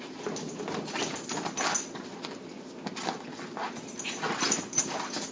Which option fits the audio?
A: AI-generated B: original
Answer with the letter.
B